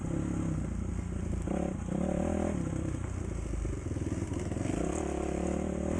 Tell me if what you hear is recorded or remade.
recorded